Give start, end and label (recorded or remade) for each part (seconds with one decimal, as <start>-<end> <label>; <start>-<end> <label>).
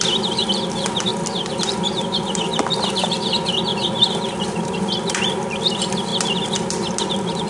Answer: 0.0-3.7 remade; 3.7-4.2 recorded; 4.2-6.1 remade; 6.1-7.0 recorded; 7.0-7.5 remade